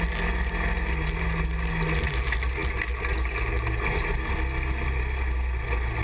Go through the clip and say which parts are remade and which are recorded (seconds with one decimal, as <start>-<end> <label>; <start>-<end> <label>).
0.0-6.0 recorded